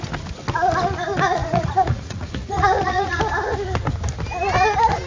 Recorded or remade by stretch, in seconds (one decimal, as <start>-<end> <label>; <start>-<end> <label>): 0.0-1.4 recorded; 1.4-3.2 remade; 3.2-5.1 recorded